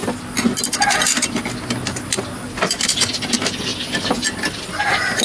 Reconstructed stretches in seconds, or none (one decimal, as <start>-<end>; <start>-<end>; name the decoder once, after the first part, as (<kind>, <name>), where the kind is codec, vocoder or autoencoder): none